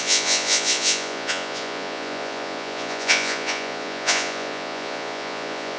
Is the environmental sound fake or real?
fake